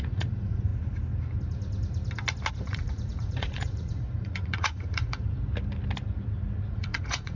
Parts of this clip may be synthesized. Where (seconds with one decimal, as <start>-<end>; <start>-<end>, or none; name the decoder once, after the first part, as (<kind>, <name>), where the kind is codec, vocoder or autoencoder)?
0.0-0.7 (vocoder, Vocos); 2.5-5.3; 6.7-7.4